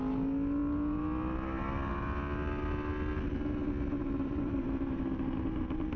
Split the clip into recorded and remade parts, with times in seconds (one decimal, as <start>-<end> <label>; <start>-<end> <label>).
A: 0.0-4.0 recorded; 4.0-5.0 remade; 5.0-6.0 recorded